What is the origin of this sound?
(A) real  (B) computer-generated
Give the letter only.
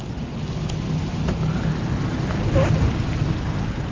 A